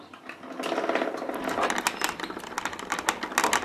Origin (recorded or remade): recorded